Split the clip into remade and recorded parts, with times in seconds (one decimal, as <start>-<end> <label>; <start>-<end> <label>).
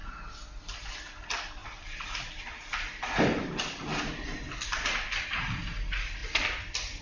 0.0-7.0 recorded